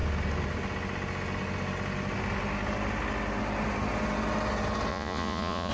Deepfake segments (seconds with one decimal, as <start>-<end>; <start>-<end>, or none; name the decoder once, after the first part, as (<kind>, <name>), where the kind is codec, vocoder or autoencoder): 4.9-5.7 (vocoder, Vocos)